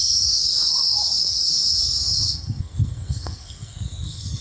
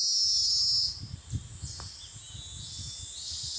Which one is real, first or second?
second